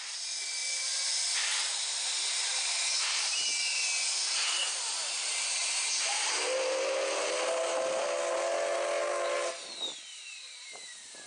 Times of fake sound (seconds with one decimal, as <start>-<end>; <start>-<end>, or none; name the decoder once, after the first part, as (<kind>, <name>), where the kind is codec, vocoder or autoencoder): none